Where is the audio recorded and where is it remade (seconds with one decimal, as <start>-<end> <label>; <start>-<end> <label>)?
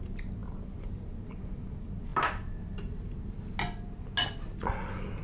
0.0-5.2 recorded